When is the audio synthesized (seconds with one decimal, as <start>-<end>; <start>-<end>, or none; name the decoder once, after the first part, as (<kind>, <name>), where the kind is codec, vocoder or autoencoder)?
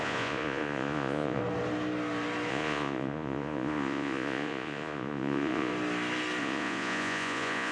0.0-1.4 (vocoder, Vocos); 2.5-5.7; 6.4-7.7